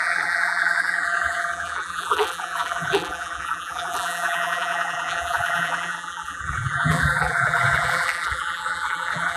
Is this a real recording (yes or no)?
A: no